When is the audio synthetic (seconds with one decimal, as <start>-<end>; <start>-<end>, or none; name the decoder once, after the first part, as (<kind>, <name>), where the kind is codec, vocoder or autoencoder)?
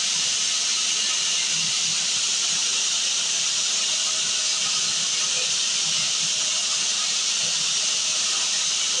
2.6-3.2 (vocoder, BigVGAN v2)